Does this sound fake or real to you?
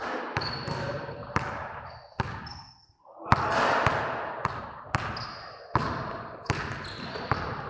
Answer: real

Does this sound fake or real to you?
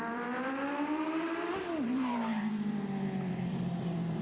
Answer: fake